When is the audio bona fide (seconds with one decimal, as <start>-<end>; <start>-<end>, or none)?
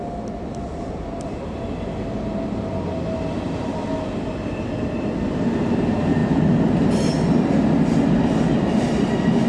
0.0-9.5